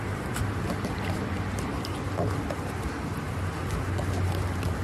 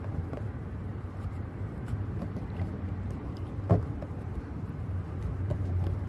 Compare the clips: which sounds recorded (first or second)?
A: first